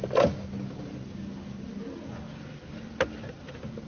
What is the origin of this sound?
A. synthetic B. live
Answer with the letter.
B